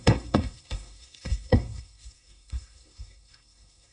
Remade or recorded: remade